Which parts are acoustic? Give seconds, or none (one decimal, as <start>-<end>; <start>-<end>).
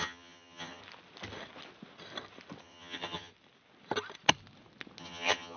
0.8-2.6; 3.3-5.0